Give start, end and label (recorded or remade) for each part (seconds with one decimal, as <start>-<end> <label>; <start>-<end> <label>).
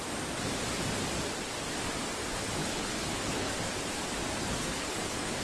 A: 0.0-2.6 recorded; 2.6-3.5 remade; 3.5-4.6 recorded; 4.6-5.4 remade